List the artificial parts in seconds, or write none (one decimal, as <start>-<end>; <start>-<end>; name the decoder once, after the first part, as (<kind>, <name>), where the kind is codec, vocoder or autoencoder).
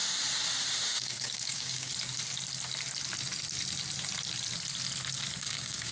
0.8-1.9 (codec, DAC); 5.4-5.9